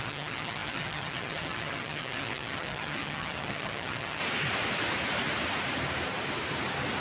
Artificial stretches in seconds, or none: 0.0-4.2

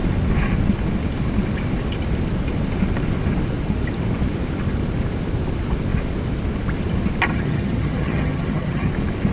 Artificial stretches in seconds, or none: 7.3-8.9

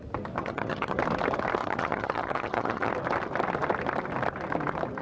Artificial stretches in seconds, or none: 0.4-1.0; 1.6-2.9

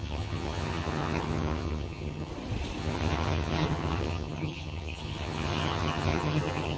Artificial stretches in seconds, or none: 0.0-2.3; 2.8-6.8